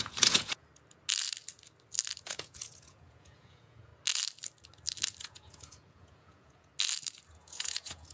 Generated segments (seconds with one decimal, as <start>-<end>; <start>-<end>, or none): 0.0-0.7; 2.2-3.9; 5.2-6.7; 7.3-8.1